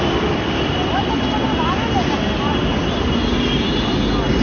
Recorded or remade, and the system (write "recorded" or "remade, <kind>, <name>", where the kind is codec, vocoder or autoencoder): recorded